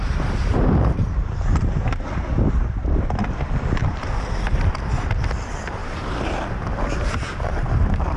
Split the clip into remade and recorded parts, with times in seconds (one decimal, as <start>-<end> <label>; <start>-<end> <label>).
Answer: 0.0-0.5 recorded; 0.5-1.2 remade; 1.2-3.8 recorded; 3.8-4.7 remade; 4.7-5.8 recorded; 5.8-8.2 remade